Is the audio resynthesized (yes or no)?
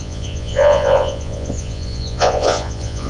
yes